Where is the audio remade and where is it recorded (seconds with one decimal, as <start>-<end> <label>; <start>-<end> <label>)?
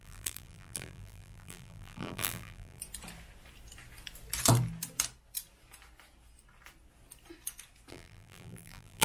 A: 0.0-2.8 remade; 2.8-7.9 recorded; 7.9-9.0 remade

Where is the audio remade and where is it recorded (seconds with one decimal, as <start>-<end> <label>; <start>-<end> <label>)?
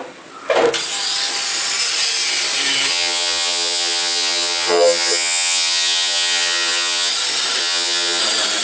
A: 0.0-2.9 recorded; 2.9-7.1 remade; 7.1-7.6 recorded; 7.6-8.2 remade; 8.2-8.6 recorded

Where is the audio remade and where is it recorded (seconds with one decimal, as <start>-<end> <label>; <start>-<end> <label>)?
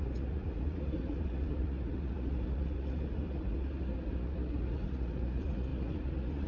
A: 0.0-6.5 remade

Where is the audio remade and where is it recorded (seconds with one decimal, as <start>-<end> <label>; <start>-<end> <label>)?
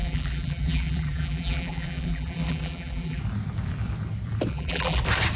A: 0.0-3.2 remade; 3.2-4.5 recorded; 4.5-5.0 remade; 5.0-5.4 recorded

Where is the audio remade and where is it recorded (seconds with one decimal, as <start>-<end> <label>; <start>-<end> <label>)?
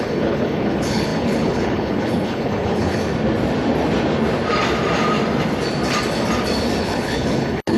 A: 0.0-3.0 remade; 3.0-6.8 recorded; 6.8-7.8 remade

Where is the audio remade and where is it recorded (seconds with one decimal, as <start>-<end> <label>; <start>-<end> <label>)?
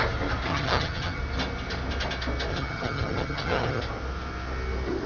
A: 0.0-0.5 recorded; 0.5-1.2 remade; 1.2-2.5 recorded; 2.5-3.8 remade; 3.8-5.1 recorded